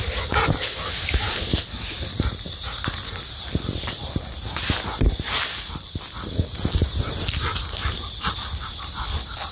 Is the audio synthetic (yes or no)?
no